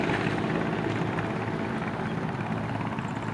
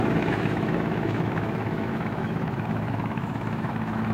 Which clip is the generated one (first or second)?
second